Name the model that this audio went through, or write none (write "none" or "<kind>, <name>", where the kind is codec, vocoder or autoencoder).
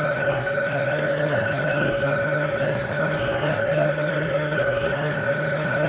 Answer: codec, SNAC